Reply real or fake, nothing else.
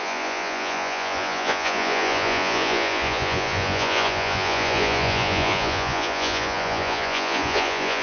fake